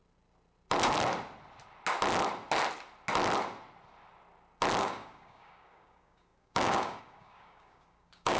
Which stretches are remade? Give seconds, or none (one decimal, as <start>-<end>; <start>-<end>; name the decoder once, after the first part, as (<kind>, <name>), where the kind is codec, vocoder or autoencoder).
4.8-8.4 (codec, DAC)